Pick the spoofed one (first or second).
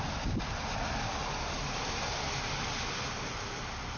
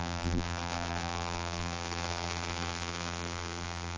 second